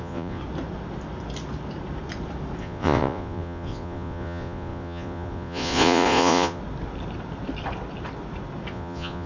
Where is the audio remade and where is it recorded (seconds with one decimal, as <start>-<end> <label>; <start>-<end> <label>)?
0.0-0.4 remade; 0.4-2.6 recorded; 2.6-6.6 remade; 6.6-8.7 recorded; 8.7-9.3 remade